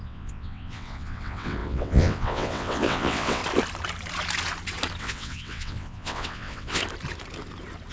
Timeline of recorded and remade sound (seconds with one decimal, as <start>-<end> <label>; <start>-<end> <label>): 0.0-3.4 remade; 3.4-5.0 recorded; 5.0-6.8 remade; 6.8-7.9 recorded